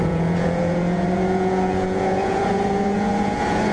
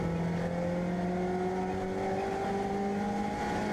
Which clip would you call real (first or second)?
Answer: second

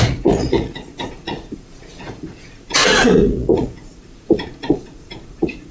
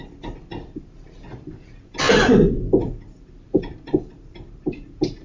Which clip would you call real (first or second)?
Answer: second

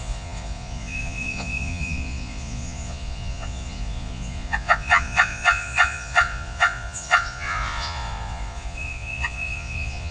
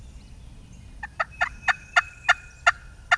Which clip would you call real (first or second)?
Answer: second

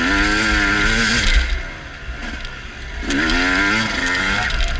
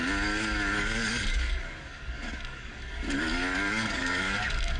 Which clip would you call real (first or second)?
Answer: first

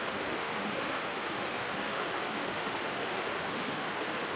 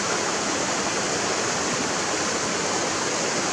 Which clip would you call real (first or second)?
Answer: second